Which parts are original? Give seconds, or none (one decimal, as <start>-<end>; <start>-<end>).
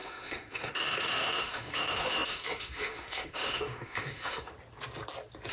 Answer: 4.5-5.5